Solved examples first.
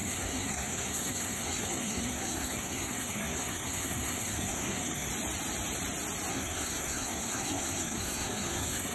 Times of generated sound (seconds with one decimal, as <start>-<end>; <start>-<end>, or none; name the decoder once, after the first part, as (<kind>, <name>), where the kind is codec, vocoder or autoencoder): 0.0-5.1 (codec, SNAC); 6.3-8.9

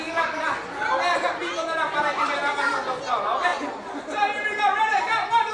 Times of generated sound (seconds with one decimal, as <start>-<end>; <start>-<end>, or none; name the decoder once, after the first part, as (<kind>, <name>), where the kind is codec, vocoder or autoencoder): 1.4-2.8 (vocoder, BigVGAN v2)

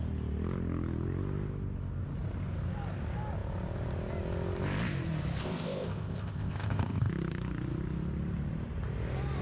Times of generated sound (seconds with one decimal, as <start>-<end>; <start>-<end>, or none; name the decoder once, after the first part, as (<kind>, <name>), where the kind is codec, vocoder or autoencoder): 5.4-7.1 (codec, ZipCodec)